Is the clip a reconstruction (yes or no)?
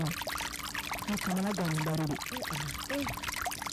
no